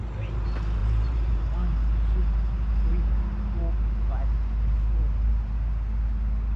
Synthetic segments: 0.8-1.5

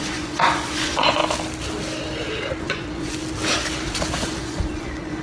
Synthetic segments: 0.0-1.2; 2.6-3.2; 4.2-5.2

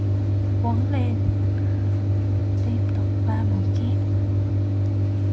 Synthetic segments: none

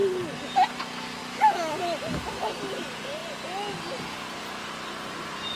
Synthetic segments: 1.2-1.8

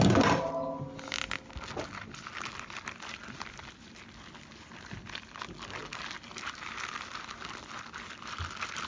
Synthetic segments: none

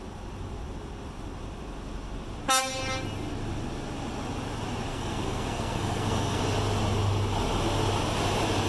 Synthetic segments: 4.9-6.4

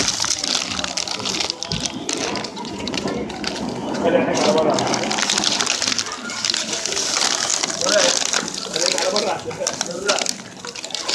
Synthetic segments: 2.5-3.1; 3.8-4.5

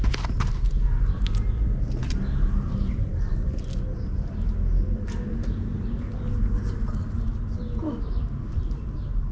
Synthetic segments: none